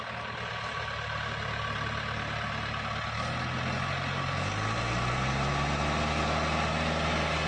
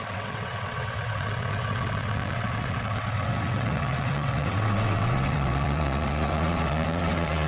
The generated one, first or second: second